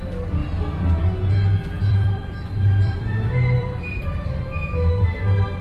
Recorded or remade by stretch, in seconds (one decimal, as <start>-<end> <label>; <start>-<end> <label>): 0.0-1.8 recorded; 1.8-4.4 remade; 4.4-5.6 recorded